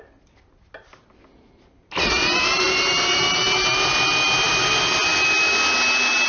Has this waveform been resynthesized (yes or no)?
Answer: no